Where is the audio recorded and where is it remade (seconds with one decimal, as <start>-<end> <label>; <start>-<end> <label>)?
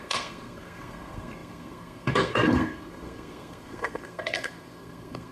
0.0-5.3 remade